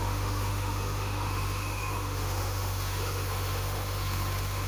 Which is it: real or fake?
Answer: fake